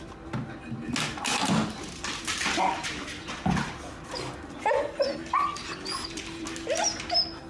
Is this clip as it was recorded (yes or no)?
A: yes